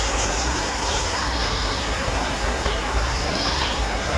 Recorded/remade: remade